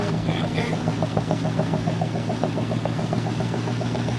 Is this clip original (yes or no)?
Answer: no